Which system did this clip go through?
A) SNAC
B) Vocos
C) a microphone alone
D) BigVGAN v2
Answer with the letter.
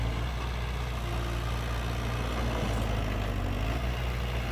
C